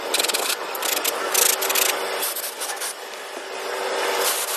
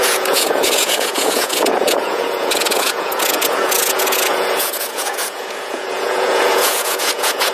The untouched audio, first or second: first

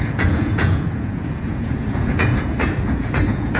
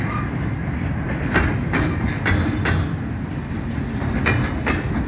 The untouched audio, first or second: second